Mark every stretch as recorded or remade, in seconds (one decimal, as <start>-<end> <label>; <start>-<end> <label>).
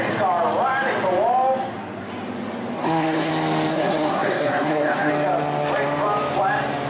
0.0-2.8 recorded; 2.8-3.3 remade; 3.3-3.7 recorded; 3.7-5.1 remade; 5.1-6.9 recorded